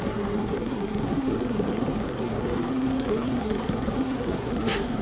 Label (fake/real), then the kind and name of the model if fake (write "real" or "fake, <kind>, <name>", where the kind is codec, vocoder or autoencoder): fake, codec, SNAC